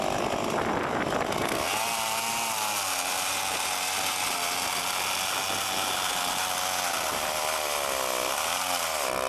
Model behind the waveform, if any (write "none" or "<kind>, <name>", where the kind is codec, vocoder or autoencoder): none